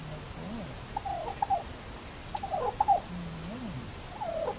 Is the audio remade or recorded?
recorded